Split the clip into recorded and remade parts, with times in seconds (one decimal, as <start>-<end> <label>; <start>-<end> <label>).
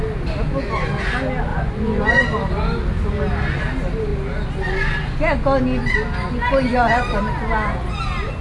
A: 0.0-1.5 recorded; 1.5-2.2 remade; 2.2-8.4 recorded